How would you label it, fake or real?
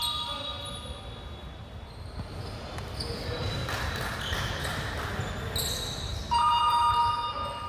real